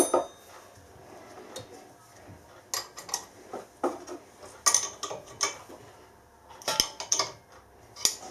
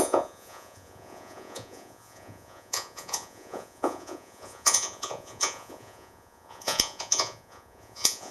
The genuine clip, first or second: first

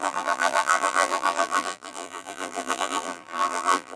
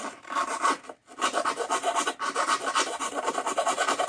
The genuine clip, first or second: second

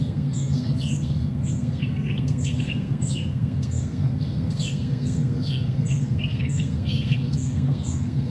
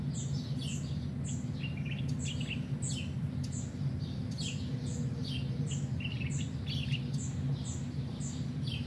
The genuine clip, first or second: second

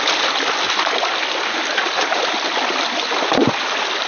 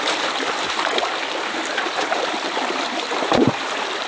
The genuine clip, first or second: first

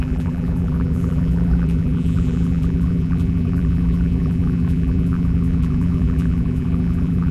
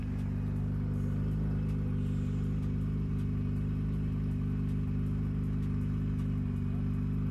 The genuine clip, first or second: second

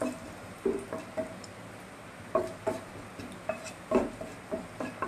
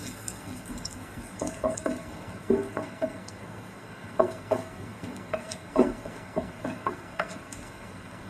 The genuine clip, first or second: first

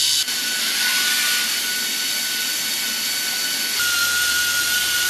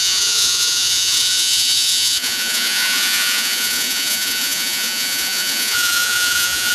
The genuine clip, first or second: first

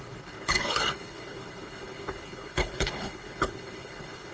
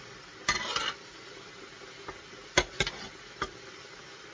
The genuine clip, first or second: second